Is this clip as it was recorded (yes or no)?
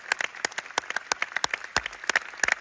yes